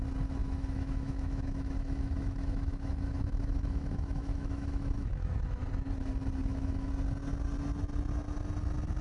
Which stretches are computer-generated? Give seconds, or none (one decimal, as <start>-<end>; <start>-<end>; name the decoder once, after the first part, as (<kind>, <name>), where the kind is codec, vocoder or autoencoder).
0.4-5.6 (autoencoder, DAC-VAE); 6.4-6.9